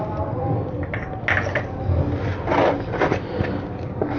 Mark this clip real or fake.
real